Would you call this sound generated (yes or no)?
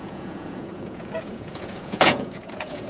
yes